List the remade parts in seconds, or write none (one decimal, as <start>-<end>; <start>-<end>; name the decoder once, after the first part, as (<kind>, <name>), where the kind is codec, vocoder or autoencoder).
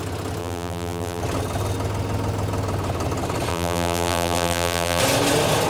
0.4-1.2 (vocoder, BigVGAN v2); 3.5-5.0